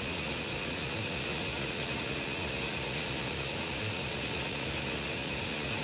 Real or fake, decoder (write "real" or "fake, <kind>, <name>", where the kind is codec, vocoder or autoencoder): fake, vocoder, Vocos